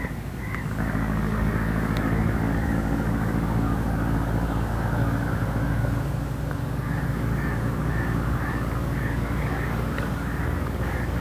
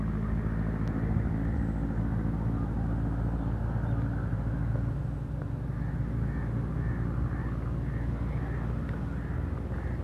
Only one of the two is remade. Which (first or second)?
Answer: first